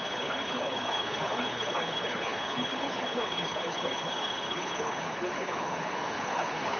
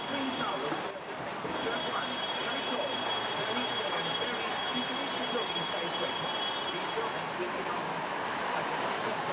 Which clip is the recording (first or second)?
second